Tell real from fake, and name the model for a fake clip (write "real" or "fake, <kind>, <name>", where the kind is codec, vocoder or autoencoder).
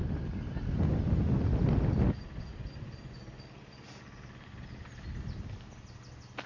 real